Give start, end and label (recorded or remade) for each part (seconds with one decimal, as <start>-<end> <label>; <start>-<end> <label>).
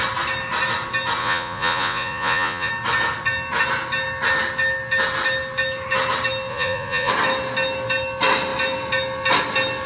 0.0-1.2 recorded; 1.2-2.7 remade; 2.7-6.5 recorded; 6.5-7.1 remade; 7.1-9.9 recorded